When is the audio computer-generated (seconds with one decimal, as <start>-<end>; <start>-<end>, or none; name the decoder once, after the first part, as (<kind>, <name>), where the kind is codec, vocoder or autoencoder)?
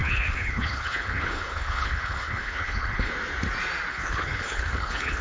0.0-3.1 (codec, HILCodec); 3.9-5.2